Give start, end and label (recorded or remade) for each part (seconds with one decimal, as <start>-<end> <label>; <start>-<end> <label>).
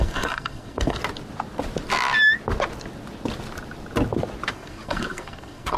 0.0-1.0 remade; 1.0-4.5 recorded; 4.5-5.8 remade